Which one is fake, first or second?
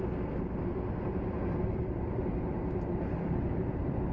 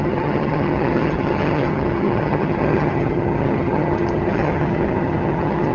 second